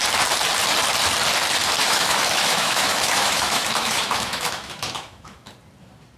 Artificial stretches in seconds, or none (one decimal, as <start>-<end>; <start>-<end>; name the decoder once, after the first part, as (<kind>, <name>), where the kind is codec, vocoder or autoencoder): 1.8-5.5 (autoencoder, DAC-VAE)